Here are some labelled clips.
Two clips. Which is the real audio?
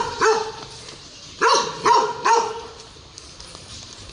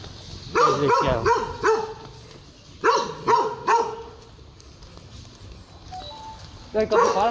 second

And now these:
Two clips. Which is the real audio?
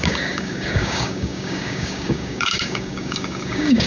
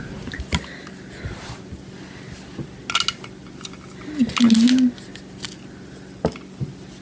second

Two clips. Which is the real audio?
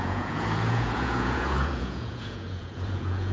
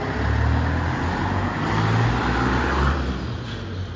second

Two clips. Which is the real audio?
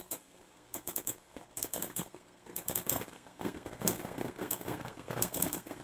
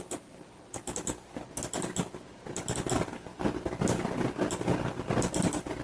second